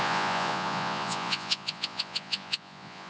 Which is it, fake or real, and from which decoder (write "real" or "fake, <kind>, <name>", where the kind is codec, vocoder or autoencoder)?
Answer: fake, vocoder, Vocos